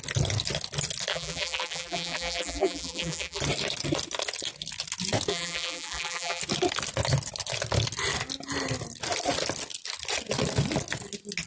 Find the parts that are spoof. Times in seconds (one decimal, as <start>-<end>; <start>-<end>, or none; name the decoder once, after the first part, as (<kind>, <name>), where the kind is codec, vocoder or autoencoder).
1.1-3.4 (vocoder, BigVGAN v2); 5.3-6.4